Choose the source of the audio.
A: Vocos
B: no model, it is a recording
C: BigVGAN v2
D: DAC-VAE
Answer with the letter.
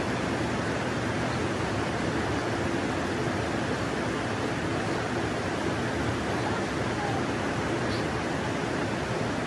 B